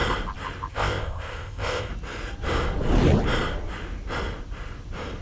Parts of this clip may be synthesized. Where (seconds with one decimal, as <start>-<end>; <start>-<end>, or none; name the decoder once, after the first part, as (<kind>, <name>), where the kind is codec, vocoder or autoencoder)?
0.7-1.9 (codec, ZipCodec)